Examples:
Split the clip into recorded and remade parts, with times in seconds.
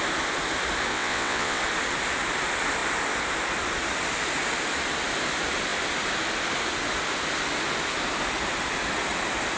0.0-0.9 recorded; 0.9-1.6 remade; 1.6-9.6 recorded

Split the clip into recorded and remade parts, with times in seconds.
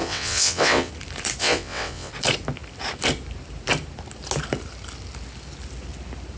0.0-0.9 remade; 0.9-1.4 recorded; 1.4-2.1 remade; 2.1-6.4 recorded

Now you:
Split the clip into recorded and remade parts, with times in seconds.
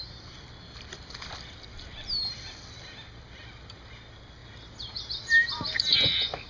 0.0-6.5 recorded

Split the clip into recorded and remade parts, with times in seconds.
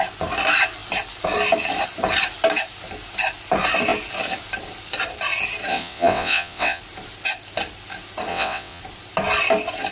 0.0-5.7 recorded; 5.7-6.8 remade; 6.8-8.3 recorded; 8.3-8.8 remade; 8.8-9.9 recorded